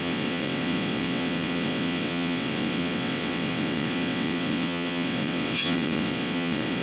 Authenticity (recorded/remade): remade